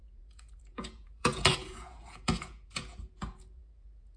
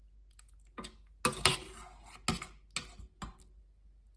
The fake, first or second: first